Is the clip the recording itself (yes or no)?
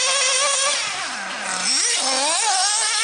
yes